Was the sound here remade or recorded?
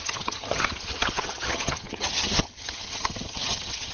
remade